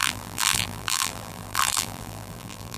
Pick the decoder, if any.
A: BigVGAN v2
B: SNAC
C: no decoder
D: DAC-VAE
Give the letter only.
A